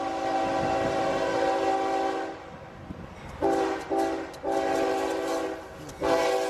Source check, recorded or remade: recorded